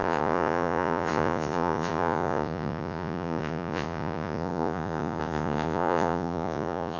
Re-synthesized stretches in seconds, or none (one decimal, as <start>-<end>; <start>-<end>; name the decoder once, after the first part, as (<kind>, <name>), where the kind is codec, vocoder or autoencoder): 0.0-7.0 (vocoder, Vocos)